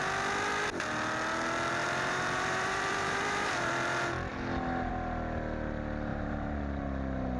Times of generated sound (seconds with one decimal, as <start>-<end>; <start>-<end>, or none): 1.8-3.7; 6.1-6.6